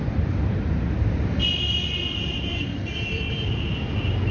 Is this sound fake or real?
fake